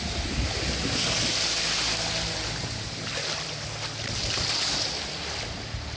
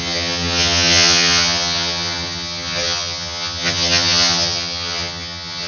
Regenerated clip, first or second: second